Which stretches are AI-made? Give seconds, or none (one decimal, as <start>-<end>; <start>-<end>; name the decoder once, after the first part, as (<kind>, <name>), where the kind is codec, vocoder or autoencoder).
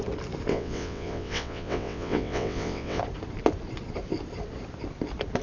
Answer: 0.5-3.0 (vocoder, WaveNeXt)